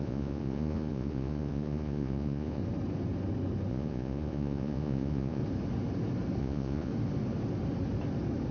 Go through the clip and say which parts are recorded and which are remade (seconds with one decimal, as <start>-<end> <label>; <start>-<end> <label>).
0.0-2.6 remade; 2.6-3.7 recorded; 3.7-5.4 remade; 5.4-6.4 recorded; 6.4-6.9 remade; 6.9-8.5 recorded